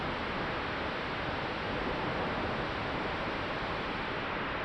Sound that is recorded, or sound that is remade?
recorded